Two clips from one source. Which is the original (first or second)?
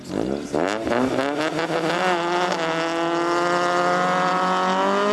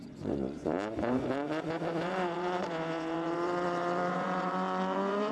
first